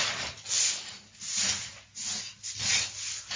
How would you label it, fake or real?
real